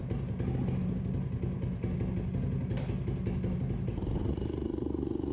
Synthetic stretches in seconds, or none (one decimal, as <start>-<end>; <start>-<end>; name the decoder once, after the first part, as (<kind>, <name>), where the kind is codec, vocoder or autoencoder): 4.2-5.3 (vocoder, Vocos)